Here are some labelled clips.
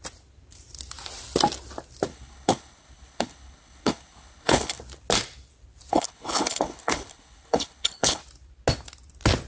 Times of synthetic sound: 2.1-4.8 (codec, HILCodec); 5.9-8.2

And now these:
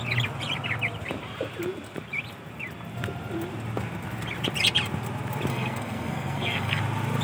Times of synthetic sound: 5.5-6.8 (codec, SNAC)

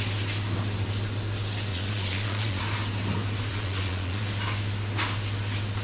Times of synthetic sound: 1.7-2.6 (vocoder, Vocos); 3.5-4.2

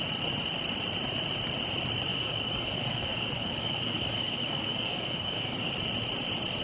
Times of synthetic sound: 2.1-5.7 (codec, DAC)

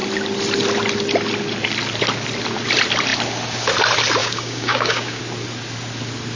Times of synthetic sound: 4.2-5.2 (codec, DAC)

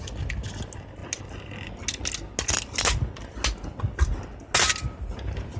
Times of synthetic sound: none

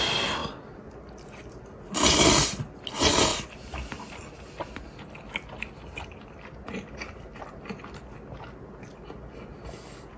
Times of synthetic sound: none

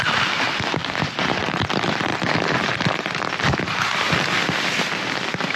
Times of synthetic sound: 0.8-1.7 (vocoder, BigVGAN v2)